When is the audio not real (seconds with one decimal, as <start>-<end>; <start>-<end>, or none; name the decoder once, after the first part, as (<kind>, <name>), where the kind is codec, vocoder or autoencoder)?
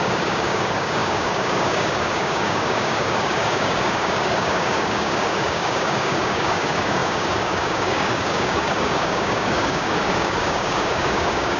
0.0-11.6 (codec, DAC)